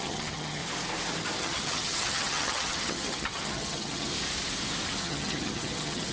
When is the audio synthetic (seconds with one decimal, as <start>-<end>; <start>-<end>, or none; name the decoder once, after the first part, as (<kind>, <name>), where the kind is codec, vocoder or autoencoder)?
0.0-0.6 (vocoder, HiFi-GAN); 1.4-4.1; 5.0-6.1